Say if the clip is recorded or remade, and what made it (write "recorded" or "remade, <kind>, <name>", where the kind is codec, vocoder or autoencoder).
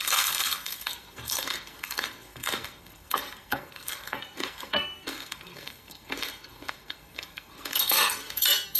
remade, codec, SNAC